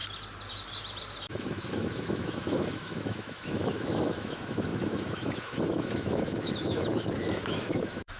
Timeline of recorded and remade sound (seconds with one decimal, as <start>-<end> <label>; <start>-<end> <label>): 0.0-1.3 recorded; 1.3-8.2 remade